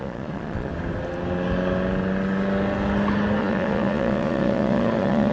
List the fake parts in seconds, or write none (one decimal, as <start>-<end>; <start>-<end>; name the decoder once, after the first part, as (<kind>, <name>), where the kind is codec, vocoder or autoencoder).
0.0-0.7 (vocoder, Vocos); 3.4-5.3